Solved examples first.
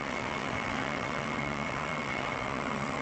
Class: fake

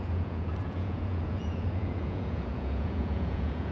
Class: fake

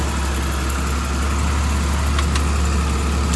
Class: real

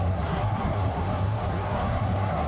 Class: fake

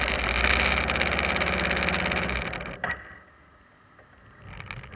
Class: real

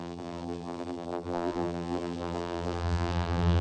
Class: fake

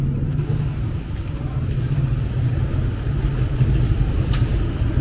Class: real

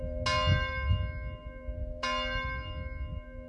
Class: real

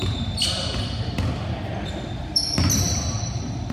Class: real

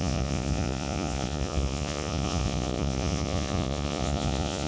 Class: fake